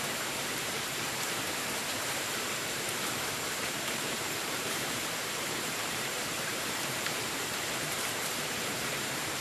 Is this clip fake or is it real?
fake